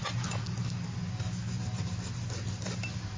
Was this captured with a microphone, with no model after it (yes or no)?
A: yes